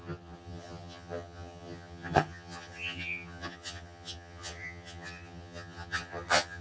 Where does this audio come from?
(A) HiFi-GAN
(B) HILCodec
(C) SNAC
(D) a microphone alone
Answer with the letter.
A